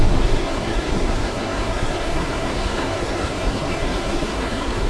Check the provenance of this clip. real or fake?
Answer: fake